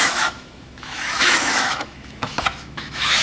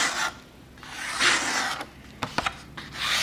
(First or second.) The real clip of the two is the second